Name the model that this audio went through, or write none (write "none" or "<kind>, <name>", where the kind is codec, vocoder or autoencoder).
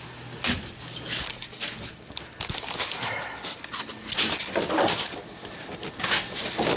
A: none